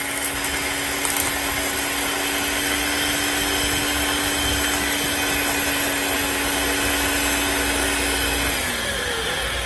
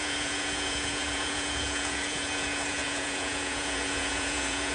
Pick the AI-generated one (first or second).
second